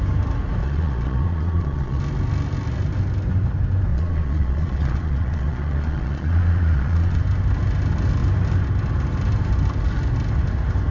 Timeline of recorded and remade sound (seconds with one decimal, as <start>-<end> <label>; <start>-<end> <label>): 0.0-0.6 recorded; 0.6-2.0 remade; 2.0-3.9 recorded; 3.9-7.2 remade; 7.2-10.9 recorded